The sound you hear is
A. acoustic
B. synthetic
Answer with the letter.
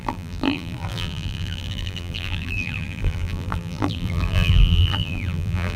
B